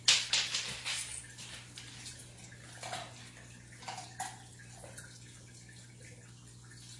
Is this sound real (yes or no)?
yes